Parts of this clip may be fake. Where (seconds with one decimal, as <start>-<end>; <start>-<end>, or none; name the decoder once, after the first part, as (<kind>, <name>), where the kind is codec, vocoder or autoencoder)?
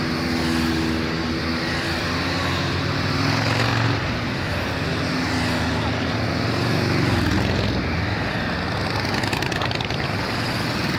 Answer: 3.7-4.5 (vocoder, BigVGAN v2)